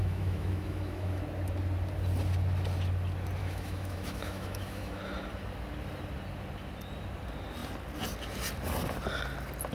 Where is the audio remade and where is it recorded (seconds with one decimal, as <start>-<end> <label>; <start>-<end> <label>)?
0.0-1.2 remade; 1.2-3.4 recorded; 3.4-5.0 remade; 5.0-9.7 recorded